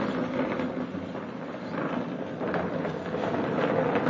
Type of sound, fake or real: real